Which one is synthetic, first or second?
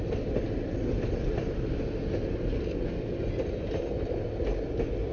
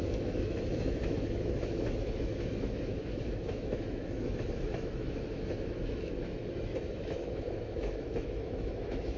second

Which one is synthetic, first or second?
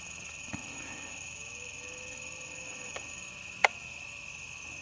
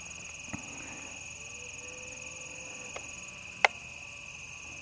first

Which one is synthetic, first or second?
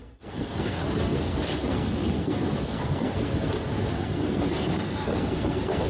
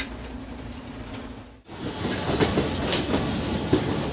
first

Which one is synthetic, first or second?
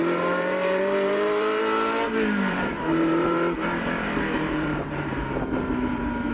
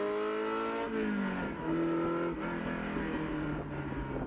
first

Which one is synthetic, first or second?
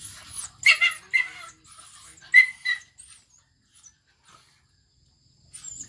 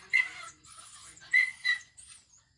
second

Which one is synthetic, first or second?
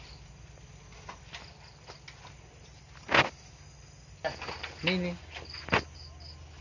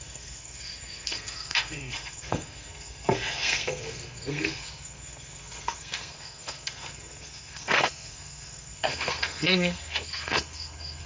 second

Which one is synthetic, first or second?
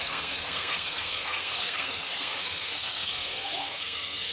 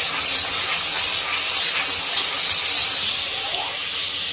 first